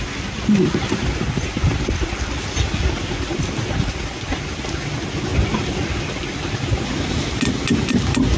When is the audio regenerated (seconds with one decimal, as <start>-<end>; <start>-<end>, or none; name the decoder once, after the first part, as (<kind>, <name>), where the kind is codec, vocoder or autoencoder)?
none